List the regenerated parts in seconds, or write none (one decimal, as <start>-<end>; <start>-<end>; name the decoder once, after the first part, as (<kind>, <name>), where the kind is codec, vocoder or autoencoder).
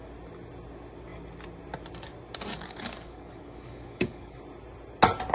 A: 2.5-4.4 (codec, DAC)